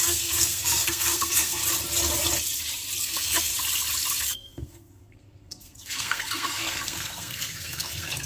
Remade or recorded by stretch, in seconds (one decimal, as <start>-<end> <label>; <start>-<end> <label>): 0.0-1.6 remade; 1.6-3.0 recorded; 3.0-3.5 remade; 3.5-4.2 recorded; 4.2-8.3 remade